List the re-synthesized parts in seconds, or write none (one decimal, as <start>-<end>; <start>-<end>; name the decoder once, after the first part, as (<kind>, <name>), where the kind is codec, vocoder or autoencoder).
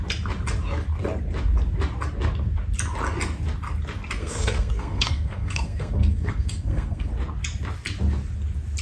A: 4.2-7.1 (codec, SNAC)